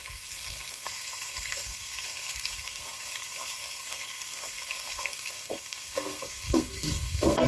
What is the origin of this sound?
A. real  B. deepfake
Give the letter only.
B